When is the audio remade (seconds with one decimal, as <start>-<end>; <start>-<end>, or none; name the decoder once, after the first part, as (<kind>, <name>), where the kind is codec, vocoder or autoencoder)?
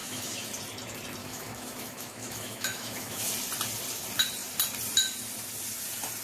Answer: 0.0-0.5 (autoencoder, DAC-VAE); 1.2-3.3